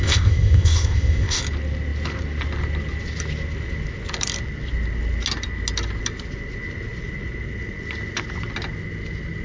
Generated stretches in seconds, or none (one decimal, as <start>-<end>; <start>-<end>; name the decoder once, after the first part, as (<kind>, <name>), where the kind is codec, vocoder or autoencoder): 0.0-1.4 (codec, ZipCodec)